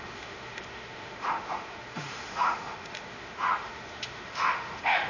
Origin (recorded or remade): remade